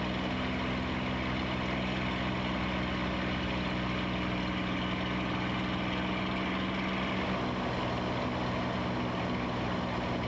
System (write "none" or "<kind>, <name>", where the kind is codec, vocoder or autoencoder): none